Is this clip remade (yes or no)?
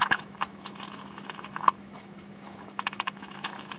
yes